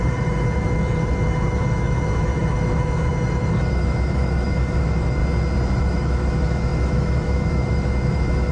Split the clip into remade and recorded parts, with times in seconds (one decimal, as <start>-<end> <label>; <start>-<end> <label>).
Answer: 0.0-5.2 remade; 5.2-5.8 recorded; 5.8-8.5 remade